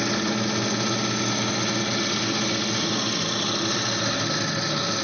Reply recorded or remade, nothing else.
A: recorded